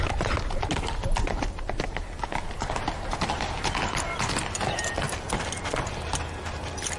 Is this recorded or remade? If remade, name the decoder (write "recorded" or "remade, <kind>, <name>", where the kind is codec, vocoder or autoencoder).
recorded